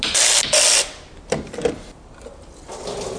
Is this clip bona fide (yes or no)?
yes